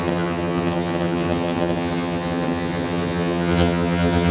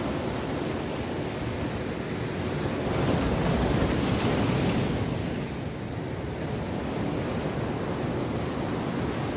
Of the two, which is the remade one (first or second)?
first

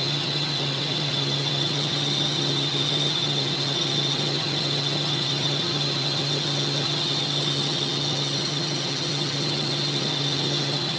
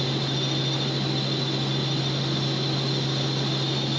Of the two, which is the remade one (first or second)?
first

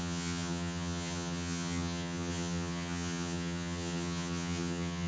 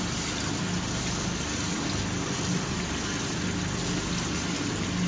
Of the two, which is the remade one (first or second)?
first